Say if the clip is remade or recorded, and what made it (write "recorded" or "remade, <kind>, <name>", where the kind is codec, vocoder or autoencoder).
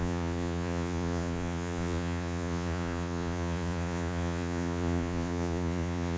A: remade, vocoder, Vocos